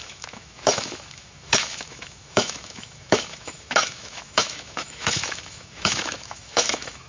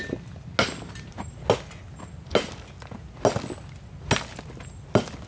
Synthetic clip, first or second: first